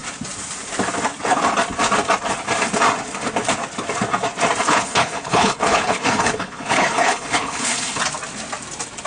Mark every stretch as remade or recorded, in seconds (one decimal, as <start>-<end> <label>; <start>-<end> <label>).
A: 0.0-4.6 recorded; 4.6-8.0 remade; 8.0-9.1 recorded